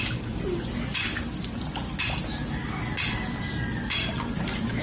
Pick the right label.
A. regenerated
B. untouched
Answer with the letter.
B